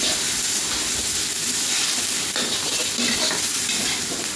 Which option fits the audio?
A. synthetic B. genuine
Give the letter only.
B